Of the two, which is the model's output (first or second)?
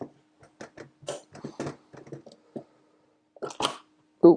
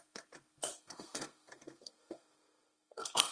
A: second